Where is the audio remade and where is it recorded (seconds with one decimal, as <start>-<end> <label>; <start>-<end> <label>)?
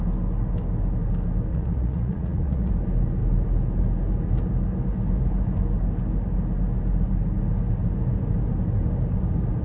0.0-1.5 recorded; 1.5-2.7 remade; 2.7-9.6 recorded